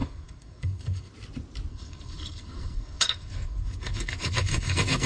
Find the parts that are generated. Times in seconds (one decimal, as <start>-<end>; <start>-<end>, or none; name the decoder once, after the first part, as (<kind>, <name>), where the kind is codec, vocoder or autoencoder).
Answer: 0.0-1.1 (codec, SNAC); 1.7-5.1